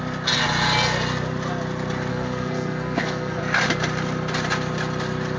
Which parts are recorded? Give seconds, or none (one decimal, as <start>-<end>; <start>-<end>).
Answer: 0.0-2.1; 3.4-5.4